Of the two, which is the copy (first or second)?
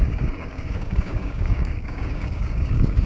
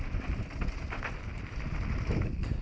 first